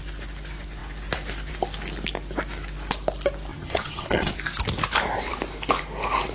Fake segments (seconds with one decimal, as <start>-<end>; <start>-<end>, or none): 3.5-4.3